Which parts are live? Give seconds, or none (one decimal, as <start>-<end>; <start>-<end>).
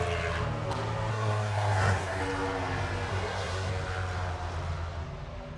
0.0-1.1; 2.2-3.1; 3.7-5.6